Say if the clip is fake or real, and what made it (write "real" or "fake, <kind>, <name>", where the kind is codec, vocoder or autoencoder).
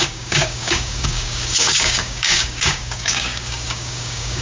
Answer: fake, codec, DAC